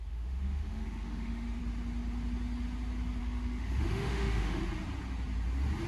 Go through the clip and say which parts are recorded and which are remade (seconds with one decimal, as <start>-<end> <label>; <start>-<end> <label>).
0.0-1.6 remade; 1.6-3.2 recorded; 3.2-4.6 remade; 4.6-5.9 recorded

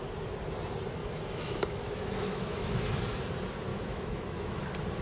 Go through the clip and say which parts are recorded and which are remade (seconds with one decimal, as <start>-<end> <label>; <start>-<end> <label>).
0.0-1.0 recorded; 1.0-2.8 remade; 2.8-3.7 recorded; 3.7-4.6 remade; 4.6-5.0 recorded

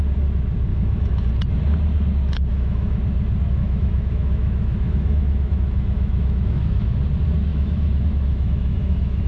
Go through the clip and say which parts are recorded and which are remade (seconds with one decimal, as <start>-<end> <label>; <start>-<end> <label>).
0.0-0.7 recorded; 0.7-1.3 remade; 1.3-2.5 recorded; 2.5-3.0 remade; 3.0-3.6 recorded; 3.6-7.0 remade; 7.0-7.5 recorded; 7.5-9.3 remade

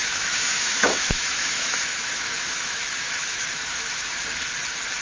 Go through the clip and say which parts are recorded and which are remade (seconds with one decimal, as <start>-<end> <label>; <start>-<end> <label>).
0.0-4.1 remade; 4.1-5.0 recorded

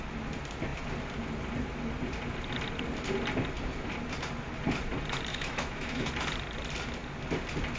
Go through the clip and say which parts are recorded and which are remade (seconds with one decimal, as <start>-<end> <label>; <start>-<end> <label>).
0.0-5.3 recorded; 5.3-6.1 remade; 6.1-7.8 recorded

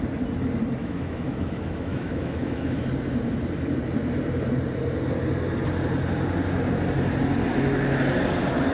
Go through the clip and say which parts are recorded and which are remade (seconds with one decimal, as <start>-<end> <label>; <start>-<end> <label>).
0.0-0.8 recorded; 0.8-2.8 remade; 2.8-7.5 recorded; 7.5-8.0 remade; 8.0-8.7 recorded

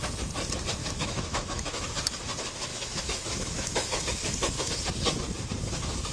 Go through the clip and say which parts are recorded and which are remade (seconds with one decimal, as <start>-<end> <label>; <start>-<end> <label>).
0.0-0.8 recorded; 0.8-1.9 remade; 1.9-2.7 recorded; 2.7-4.7 remade; 4.7-6.1 recorded

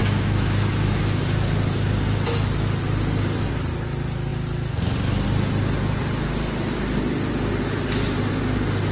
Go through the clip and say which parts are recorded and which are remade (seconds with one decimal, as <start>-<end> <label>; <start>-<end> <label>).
0.0-1.2 remade; 1.2-8.9 recorded